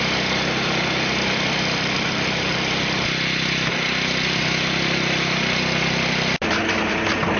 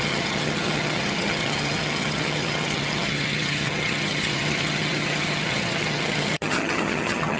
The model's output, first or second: second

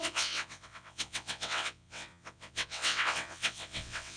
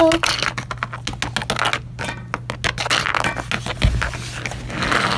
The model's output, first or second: first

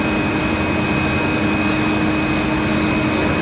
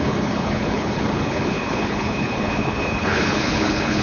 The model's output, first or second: second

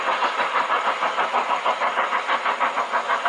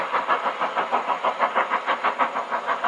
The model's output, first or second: first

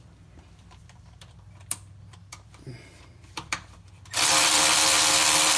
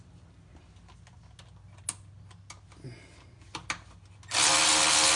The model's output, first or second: first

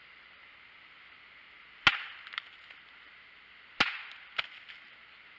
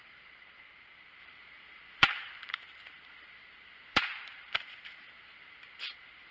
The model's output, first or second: second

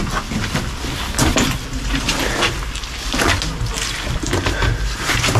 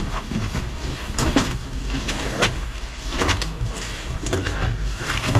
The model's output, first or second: second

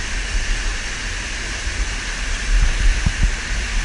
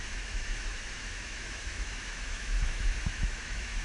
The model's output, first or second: second